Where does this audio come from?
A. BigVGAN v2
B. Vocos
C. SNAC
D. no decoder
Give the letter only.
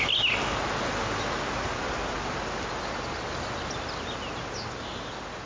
D